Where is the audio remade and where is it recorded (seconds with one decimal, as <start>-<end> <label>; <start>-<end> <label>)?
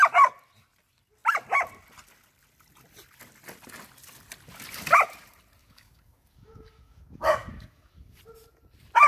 0.0-5.6 recorded; 5.6-8.2 remade; 8.2-9.1 recorded